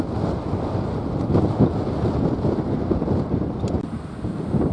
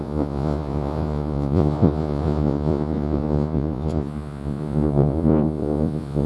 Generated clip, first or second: second